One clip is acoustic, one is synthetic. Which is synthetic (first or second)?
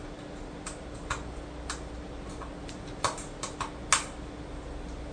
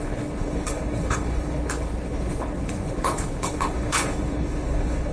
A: second